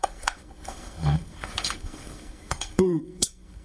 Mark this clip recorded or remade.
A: remade